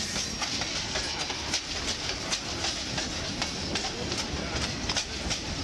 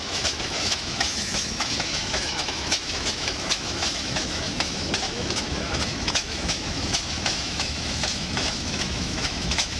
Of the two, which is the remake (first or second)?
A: second